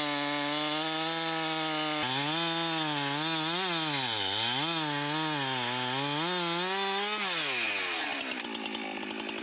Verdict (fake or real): real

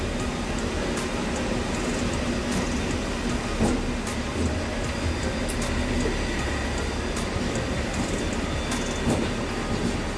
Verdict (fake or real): real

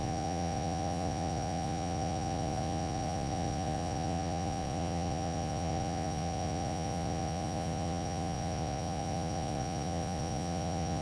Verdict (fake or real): fake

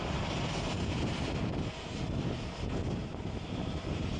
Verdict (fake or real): real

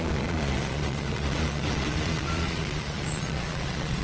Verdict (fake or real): fake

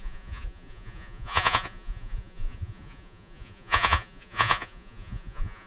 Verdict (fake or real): fake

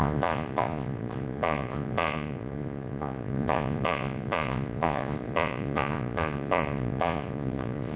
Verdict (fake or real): fake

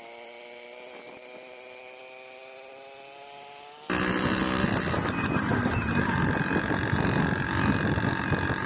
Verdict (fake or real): real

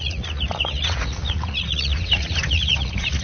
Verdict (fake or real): fake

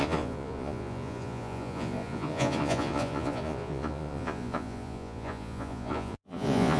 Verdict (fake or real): fake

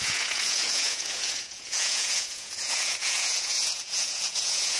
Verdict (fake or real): fake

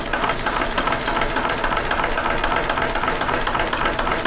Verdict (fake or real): real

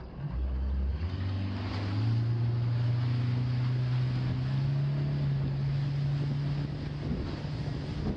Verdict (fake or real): real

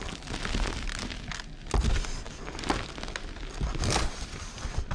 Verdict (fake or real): real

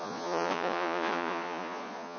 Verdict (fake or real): fake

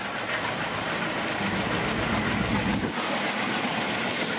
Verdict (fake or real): real